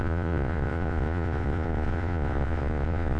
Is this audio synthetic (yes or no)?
yes